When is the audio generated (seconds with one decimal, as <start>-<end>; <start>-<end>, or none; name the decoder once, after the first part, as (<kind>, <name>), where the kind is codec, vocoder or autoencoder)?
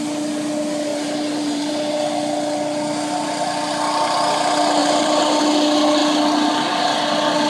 0.9-1.7 (vocoder, BigVGAN v2); 4.8-5.4